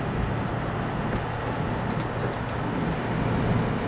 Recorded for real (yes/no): yes